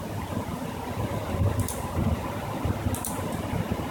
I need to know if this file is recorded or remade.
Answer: recorded